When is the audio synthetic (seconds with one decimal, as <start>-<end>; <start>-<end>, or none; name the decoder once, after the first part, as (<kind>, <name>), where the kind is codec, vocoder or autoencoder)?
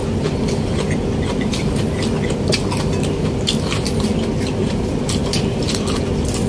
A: 4.6-5.7 (vocoder, BigVGAN v2)